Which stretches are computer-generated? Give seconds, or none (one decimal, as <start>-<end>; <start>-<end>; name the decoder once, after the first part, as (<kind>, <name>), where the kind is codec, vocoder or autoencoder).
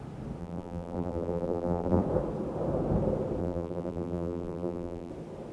0.4-2.0 (vocoder, BigVGAN v2); 3.4-5.1